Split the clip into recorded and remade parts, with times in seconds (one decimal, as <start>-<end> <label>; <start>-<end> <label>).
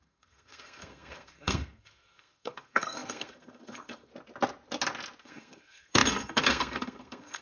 0.0-4.1 remade; 4.1-5.2 recorded; 5.2-7.4 remade